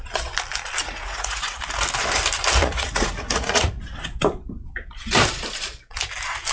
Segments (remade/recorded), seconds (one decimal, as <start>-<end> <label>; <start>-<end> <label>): 0.0-0.8 recorded; 0.8-1.6 remade; 1.6-2.6 recorded; 2.6-3.7 remade; 3.7-6.5 recorded